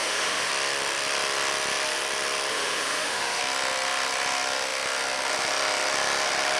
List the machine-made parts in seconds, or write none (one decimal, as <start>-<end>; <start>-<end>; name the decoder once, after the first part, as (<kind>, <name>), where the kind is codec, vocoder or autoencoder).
0.0-0.5 (autoencoder, DAC-VAE); 2.5-3.4

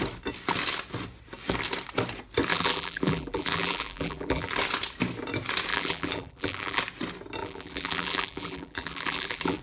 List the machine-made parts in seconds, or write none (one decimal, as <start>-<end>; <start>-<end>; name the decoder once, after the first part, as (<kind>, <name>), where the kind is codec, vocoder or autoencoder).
2.5-4.5 (vocoder, BigVGAN v2); 5.7-6.8; 7.4-9.6